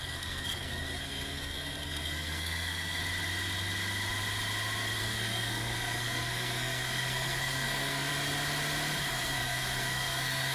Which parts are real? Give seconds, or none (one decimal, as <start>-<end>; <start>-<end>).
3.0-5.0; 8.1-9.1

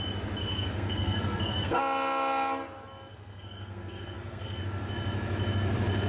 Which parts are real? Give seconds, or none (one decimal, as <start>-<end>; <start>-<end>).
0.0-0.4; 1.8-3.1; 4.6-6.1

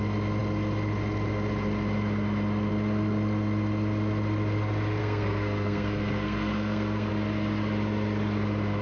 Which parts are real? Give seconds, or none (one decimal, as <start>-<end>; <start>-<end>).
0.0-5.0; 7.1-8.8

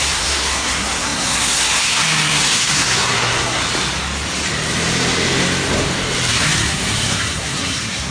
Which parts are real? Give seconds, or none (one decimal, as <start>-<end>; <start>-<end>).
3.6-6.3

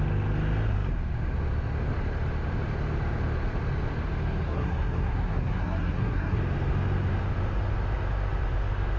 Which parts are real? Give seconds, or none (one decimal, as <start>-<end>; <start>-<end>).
0.0-4.4; 6.4-9.0

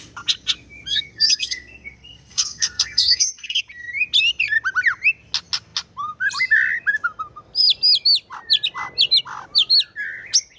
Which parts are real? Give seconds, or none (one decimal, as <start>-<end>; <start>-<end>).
0.0-0.9; 3.6-10.6